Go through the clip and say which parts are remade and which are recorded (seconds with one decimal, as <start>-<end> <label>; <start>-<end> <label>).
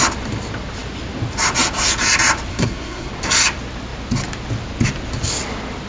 0.0-2.5 recorded; 2.5-3.1 remade; 3.1-5.9 recorded